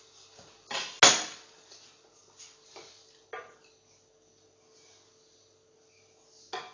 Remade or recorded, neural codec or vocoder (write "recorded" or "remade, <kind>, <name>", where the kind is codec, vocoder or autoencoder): recorded